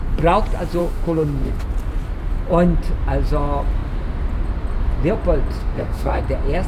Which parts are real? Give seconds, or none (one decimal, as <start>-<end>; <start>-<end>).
0.0-0.8; 1.6-5.6; 6.2-6.7